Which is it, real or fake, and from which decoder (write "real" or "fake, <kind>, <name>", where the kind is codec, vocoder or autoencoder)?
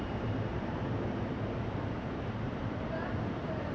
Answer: fake, vocoder, BigVGAN v2